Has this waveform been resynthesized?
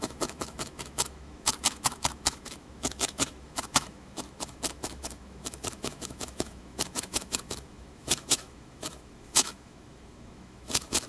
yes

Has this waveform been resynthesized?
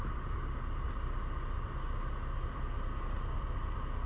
no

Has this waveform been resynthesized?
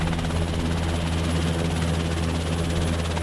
no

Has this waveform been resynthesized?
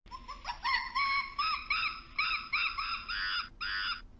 no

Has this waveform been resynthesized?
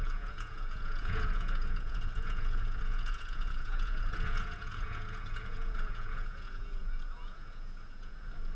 yes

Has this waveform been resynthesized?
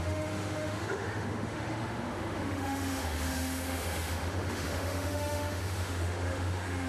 yes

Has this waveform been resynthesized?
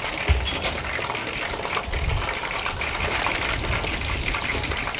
no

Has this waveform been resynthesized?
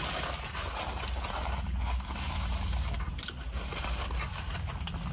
no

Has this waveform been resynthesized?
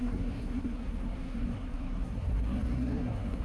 yes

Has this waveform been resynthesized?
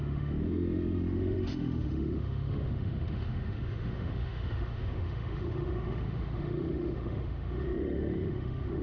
yes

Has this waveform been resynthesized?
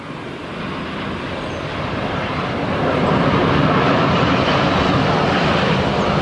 no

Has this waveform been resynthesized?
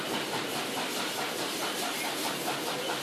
no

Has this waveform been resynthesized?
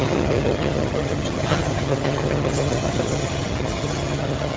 yes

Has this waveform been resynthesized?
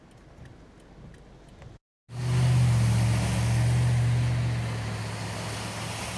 no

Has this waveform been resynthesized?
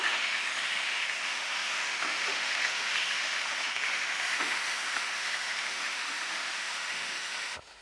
yes